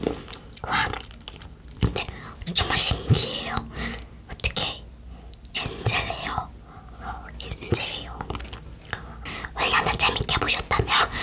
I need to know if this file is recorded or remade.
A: recorded